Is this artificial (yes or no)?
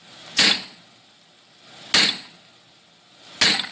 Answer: no